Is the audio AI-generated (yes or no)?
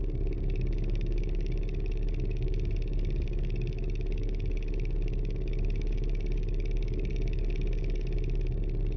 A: yes